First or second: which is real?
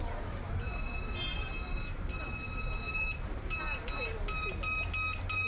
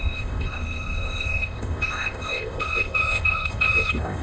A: first